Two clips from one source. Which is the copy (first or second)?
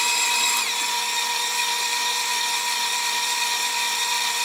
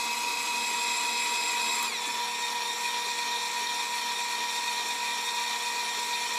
first